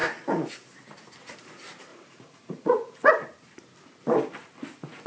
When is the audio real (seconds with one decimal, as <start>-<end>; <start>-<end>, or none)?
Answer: 0.0-1.9; 3.1-5.1